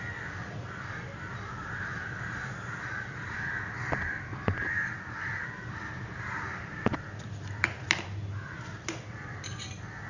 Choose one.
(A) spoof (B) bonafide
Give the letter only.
A